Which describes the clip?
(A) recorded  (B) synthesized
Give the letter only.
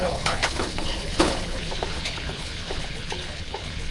B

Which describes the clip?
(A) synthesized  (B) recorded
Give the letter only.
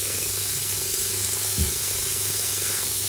A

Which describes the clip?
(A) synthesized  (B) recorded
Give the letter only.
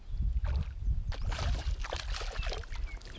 B